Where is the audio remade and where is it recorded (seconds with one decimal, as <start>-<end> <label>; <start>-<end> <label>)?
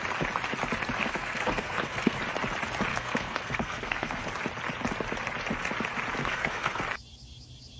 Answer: 0.0-1.0 recorded; 1.0-2.2 remade; 2.2-2.9 recorded; 2.9-4.2 remade; 4.2-6.2 recorded; 6.2-6.8 remade; 6.8-7.8 recorded